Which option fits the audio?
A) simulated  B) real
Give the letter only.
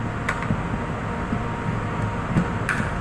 B